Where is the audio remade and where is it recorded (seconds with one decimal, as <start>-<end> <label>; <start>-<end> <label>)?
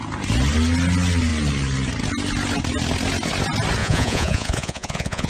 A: 0.0-3.8 recorded; 3.8-5.3 remade